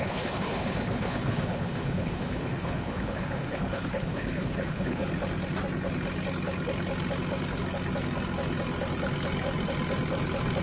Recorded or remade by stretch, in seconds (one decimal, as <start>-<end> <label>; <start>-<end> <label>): 0.0-5.0 remade; 5.0-10.6 recorded